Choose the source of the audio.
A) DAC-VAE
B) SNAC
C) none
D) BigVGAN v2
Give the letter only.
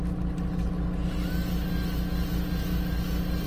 C